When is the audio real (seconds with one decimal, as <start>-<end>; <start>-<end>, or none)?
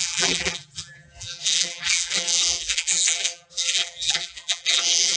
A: none